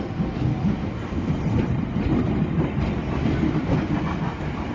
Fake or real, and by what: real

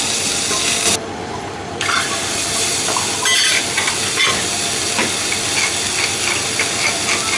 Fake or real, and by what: real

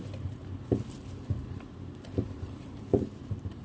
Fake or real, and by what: fake, vocoder, BigVGAN v2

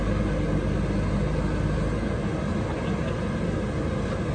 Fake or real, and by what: real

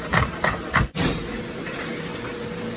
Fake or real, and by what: fake, vocoder, BigVGAN v2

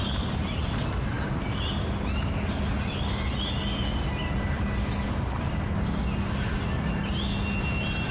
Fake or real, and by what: real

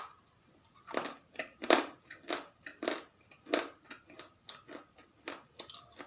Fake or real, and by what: real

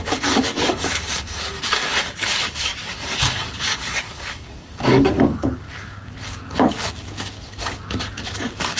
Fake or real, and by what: fake, codec, DAC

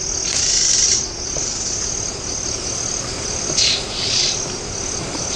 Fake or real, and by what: real